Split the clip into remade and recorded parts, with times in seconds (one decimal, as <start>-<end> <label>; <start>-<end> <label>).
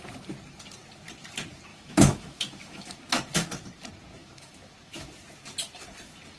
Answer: 0.0-1.7 recorded; 1.7-3.1 remade; 3.1-4.2 recorded; 4.2-5.1 remade; 5.1-6.4 recorded